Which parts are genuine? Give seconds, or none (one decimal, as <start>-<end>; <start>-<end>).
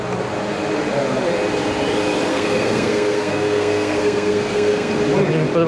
0.0-2.3; 4.9-5.7